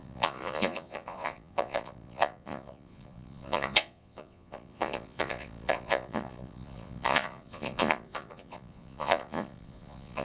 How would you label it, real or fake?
fake